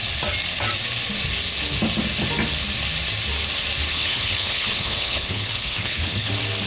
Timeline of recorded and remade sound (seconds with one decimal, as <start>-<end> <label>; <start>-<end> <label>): 0.0-3.9 recorded; 3.9-6.3 remade; 6.3-6.7 recorded

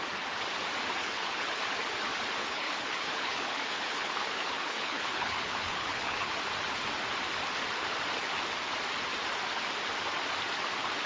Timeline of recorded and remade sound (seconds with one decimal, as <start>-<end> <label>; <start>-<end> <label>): 0.0-1.0 recorded; 1.0-1.6 remade; 1.6-2.4 recorded; 2.4-6.3 remade; 6.3-11.1 recorded

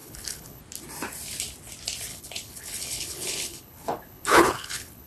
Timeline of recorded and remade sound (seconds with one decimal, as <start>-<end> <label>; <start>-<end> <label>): 0.0-0.6 remade; 0.6-2.1 recorded; 2.1-5.1 remade